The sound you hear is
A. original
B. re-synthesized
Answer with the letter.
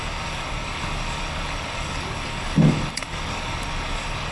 B